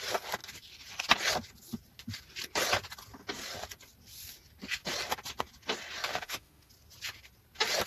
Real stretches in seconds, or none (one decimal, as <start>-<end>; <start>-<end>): 0.0-6.1; 6.7-7.9

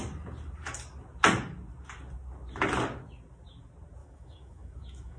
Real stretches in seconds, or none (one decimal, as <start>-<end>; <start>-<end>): 0.0-4.0

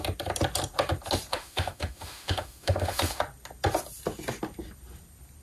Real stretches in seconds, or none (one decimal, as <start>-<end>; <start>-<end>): 0.0-1.3; 3.2-5.4

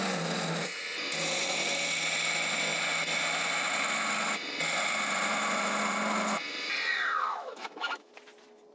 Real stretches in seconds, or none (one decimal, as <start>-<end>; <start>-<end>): 0.0-7.3; 8.1-8.7

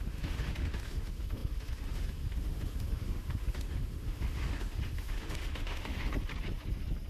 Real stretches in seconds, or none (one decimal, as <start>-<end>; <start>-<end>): 6.1-7.1

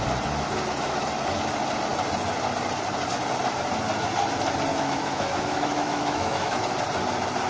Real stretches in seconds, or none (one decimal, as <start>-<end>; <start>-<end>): 0.0-4.7; 6.6-7.5

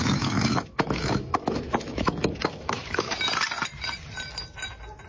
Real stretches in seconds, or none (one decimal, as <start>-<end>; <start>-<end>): 3.1-5.1

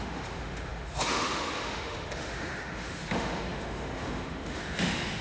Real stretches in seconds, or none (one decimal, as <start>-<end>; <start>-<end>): none